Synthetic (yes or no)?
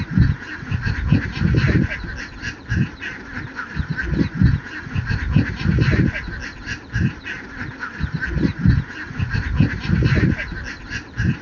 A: no